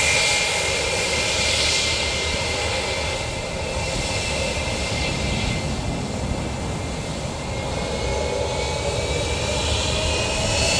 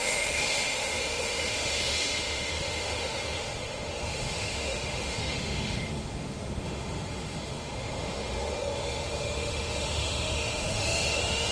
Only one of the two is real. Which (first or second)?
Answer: first